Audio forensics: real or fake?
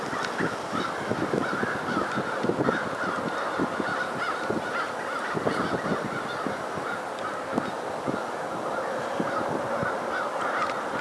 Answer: real